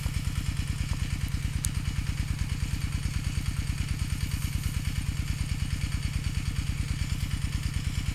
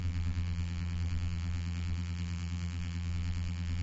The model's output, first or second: second